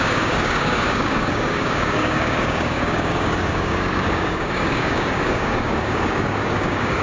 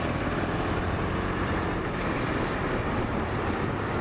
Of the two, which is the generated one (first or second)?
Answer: first